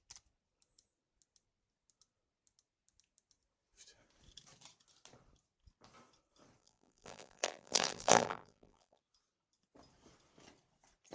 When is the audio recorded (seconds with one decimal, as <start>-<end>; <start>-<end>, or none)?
0.0-6.6; 9.0-11.1